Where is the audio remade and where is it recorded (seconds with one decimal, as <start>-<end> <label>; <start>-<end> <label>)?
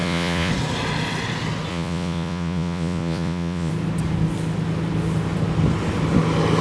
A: 0.0-0.5 remade; 0.5-1.7 recorded; 1.7-3.7 remade; 3.7-6.6 recorded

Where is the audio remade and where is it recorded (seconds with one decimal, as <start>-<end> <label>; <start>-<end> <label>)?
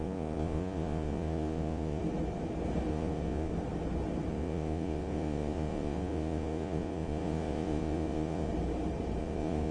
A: 0.0-2.0 remade; 2.0-2.9 recorded; 2.9-3.5 remade; 3.5-4.3 recorded; 4.3-8.5 remade; 8.5-9.2 recorded; 9.2-9.7 remade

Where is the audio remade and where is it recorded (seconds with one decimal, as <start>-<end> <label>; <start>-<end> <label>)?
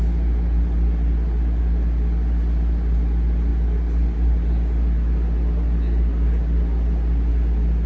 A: 0.0-7.9 recorded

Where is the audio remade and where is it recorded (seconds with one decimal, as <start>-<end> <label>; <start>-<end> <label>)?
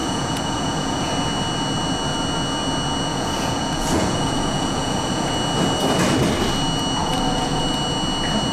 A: 0.0-1.1 remade; 1.1-3.1 recorded; 3.1-5.3 remade; 5.3-7.0 recorded; 7.0-7.6 remade; 7.6-8.5 recorded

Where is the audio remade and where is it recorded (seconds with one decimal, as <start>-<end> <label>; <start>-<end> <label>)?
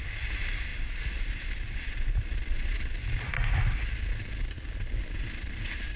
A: 0.0-6.0 recorded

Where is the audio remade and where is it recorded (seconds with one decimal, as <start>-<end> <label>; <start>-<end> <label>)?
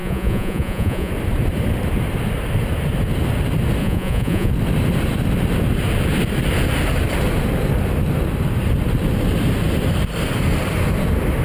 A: 0.0-1.1 remade; 1.1-3.8 recorded; 3.8-4.5 remade; 4.5-11.4 recorded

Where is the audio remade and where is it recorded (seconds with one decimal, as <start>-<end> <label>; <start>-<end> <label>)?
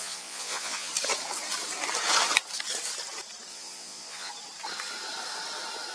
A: 0.0-0.9 remade; 0.9-3.5 recorded; 3.5-4.3 remade; 4.3-5.9 recorded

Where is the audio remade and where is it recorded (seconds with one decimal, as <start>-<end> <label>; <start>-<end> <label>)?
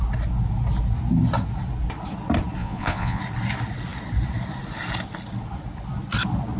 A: 0.0-2.6 recorded; 2.6-3.2 remade; 3.2-6.6 recorded